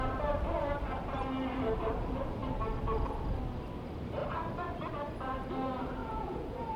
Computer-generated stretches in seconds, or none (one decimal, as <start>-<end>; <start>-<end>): 6.0-6.8